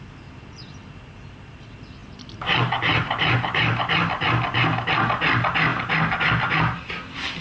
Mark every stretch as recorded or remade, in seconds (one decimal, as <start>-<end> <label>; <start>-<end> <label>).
0.0-2.0 recorded; 2.0-4.1 remade; 4.1-7.4 recorded